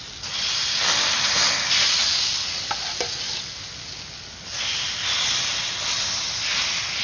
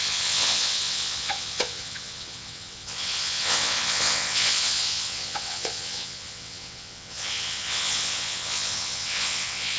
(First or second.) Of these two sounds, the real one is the first